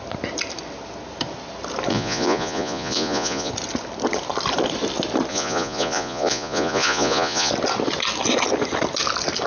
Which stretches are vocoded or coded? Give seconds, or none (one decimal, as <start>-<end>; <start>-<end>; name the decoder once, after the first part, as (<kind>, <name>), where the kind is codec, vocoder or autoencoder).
1.9-3.5 (vocoder, Vocos); 5.3-7.5

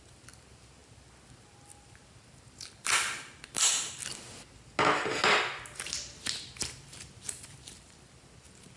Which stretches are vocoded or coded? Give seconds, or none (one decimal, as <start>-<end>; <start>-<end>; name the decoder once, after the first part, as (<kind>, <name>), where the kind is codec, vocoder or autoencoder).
none

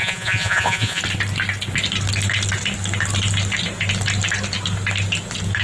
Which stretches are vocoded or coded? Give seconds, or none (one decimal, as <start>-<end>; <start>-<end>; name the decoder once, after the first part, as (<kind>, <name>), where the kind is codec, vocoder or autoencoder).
0.0-1.0 (vocoder, Vocos)

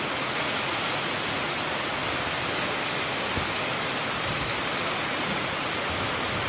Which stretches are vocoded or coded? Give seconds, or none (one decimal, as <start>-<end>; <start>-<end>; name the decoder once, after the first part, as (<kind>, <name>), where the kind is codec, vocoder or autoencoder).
0.0-2.0 (vocoder, Vocos); 4.9-5.6

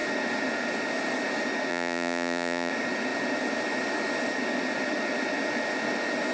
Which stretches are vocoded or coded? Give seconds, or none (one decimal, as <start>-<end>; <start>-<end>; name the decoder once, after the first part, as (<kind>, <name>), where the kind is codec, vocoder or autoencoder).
1.7-2.7 (vocoder, Vocos)

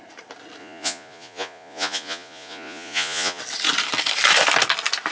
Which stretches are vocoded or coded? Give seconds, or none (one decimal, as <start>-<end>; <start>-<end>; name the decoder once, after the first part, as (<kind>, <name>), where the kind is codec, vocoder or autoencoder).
0.6-3.4 (vocoder, Vocos)